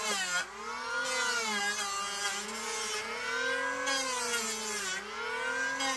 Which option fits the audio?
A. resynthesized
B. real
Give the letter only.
B